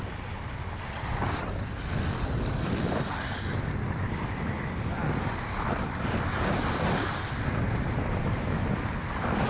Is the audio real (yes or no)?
yes